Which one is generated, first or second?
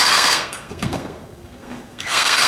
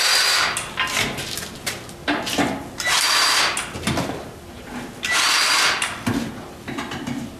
first